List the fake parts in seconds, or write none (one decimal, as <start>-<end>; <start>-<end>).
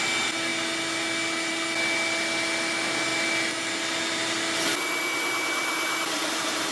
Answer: none